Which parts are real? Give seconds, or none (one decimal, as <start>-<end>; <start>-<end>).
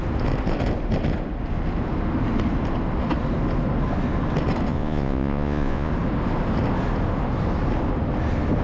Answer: 0.0-4.7; 5.9-8.6